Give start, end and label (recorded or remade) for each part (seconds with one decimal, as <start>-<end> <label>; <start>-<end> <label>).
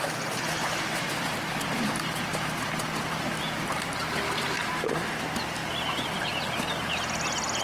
0.0-0.6 recorded; 0.6-1.9 remade; 1.9-2.3 recorded; 2.3-4.8 remade; 4.8-5.6 recorded; 5.6-6.9 remade; 6.9-7.6 recorded